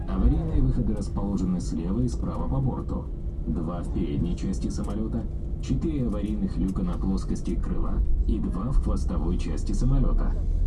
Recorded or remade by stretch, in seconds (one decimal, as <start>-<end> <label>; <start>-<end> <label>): 0.0-7.6 recorded; 7.6-8.8 remade; 8.8-10.7 recorded